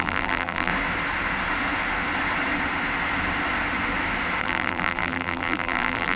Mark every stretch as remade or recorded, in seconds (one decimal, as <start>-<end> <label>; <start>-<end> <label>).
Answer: 0.0-0.7 remade; 0.7-4.4 recorded; 4.4-6.2 remade